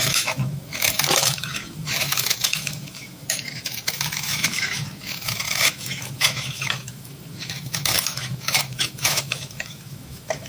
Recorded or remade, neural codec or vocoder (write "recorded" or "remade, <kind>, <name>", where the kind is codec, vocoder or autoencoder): remade, autoencoder, DAC-VAE